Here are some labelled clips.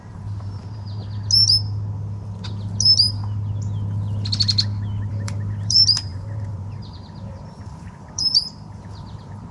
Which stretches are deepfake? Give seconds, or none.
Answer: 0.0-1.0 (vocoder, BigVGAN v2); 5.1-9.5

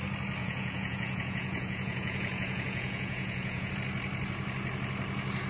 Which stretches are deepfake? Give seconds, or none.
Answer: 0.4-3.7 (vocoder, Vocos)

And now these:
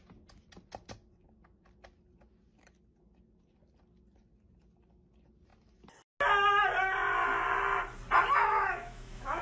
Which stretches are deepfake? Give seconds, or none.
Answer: 8.4-9.4 (autoencoder, DAC-VAE)

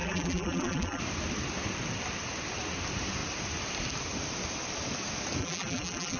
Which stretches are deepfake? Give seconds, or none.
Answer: 0.0-1.0 (vocoder, BigVGAN v2); 5.4-6.2

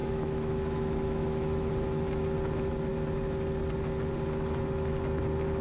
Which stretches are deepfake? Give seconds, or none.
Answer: 0.0-1.7 (autoencoder, DAC-VAE)

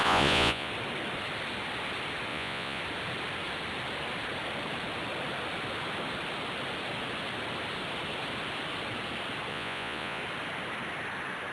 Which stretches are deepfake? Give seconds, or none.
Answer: 0.0-0.7 (vocoder, Vocos); 2.3-2.8; 9.5-10.2